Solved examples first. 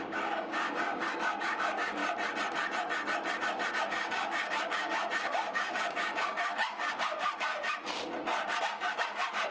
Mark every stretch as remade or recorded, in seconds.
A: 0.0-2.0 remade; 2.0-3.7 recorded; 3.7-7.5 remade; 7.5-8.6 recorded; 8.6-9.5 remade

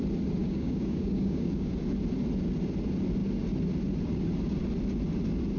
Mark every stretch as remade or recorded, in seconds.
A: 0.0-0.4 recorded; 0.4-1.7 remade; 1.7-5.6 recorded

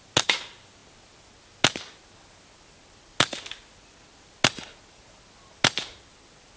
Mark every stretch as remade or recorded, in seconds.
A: 0.0-6.6 recorded

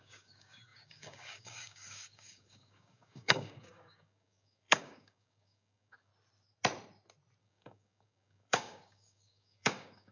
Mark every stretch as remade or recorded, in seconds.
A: 0.0-6.1 remade; 6.1-7.4 recorded; 7.4-10.1 remade

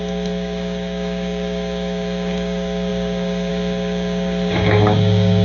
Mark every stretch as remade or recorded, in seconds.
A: 0.0-5.4 remade